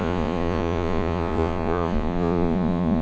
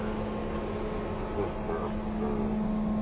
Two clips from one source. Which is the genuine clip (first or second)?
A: second